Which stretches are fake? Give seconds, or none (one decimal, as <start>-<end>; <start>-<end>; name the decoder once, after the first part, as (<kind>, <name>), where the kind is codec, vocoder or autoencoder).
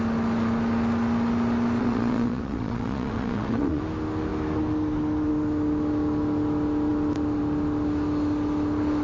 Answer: 1.8-3.8 (vocoder, WaveNeXt)